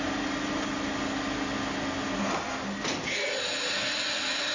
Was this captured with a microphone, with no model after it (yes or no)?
yes